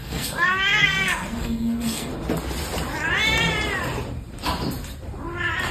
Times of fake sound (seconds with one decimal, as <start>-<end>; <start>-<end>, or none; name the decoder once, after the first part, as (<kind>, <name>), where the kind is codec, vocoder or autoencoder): 0.0-2.1 (codec, SNAC)